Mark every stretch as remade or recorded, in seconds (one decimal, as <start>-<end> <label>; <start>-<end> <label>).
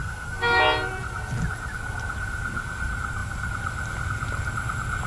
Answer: 0.0-0.6 remade; 0.6-5.1 recorded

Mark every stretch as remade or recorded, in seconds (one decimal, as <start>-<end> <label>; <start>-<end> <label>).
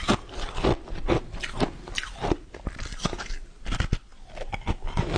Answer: 0.0-5.2 recorded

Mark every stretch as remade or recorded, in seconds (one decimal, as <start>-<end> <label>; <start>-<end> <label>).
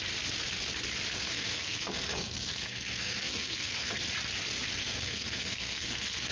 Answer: 0.0-1.1 recorded; 1.1-3.9 remade; 3.9-4.8 recorded; 4.8-6.3 remade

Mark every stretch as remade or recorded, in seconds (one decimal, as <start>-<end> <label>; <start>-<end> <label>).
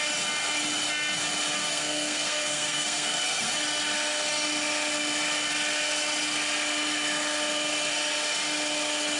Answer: 0.0-1.6 recorded; 1.6-3.5 remade; 3.5-9.2 recorded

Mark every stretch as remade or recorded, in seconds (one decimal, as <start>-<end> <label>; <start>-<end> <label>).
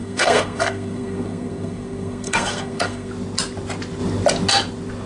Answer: 0.0-3.1 remade; 3.1-5.1 recorded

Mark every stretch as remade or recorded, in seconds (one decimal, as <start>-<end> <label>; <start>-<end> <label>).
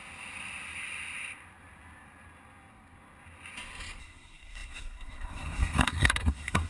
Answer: 0.0-4.0 recorded; 4.0-6.7 remade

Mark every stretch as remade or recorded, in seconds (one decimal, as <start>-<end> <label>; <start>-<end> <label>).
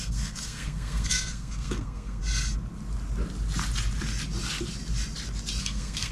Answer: 0.0-2.2 remade; 2.2-5.6 recorded; 5.6-6.1 remade